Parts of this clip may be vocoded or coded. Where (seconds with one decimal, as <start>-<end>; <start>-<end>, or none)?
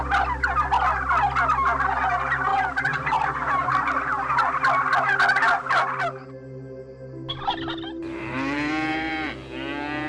2.5-3.7; 8.0-9.3